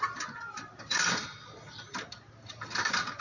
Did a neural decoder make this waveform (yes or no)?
no